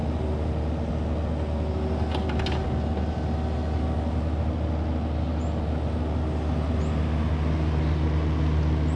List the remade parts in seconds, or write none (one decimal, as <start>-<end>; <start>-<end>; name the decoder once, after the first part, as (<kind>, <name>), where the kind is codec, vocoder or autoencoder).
none

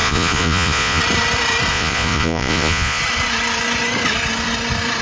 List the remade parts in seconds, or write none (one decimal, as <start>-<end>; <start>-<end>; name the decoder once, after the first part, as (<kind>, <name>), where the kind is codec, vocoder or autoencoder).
0.0-1.0 (vocoder, Vocos); 1.7-3.0

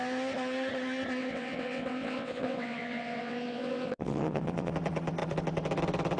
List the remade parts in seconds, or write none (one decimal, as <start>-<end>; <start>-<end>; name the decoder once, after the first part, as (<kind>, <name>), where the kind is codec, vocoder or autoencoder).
1.2-4.7 (vocoder, WaveNeXt)

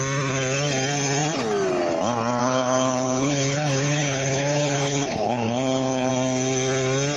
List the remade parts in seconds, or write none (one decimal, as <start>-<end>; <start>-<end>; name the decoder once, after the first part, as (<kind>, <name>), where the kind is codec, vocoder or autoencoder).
2.4-6.1 (codec, HILCodec)

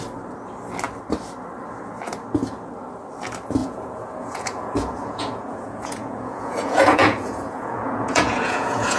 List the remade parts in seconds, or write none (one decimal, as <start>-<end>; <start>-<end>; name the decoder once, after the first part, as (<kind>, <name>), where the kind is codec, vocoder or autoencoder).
3.6-9.0 (vocoder, Vocos)

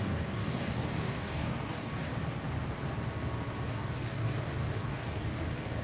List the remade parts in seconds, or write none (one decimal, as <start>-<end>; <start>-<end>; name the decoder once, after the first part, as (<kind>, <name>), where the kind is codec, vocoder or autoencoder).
0.0-2.1 (codec, DAC); 3.7-5.8

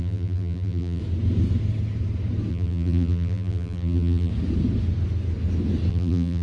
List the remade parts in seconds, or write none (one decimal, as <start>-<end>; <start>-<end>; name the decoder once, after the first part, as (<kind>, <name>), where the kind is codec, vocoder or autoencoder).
0.0-1.0 (vocoder, BigVGAN v2); 2.5-4.3; 5.9-6.4